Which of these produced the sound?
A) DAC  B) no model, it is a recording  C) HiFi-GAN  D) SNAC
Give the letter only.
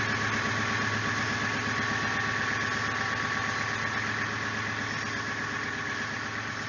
B